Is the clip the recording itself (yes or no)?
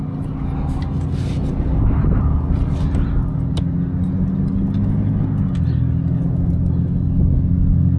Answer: yes